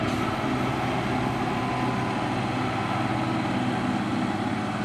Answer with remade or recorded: recorded